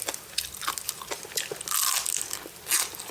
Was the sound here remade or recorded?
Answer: recorded